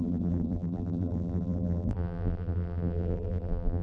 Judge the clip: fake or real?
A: fake